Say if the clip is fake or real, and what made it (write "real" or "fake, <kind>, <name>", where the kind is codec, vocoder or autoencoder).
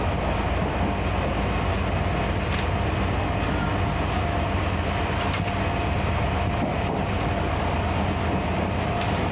real